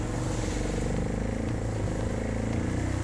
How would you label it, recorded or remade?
recorded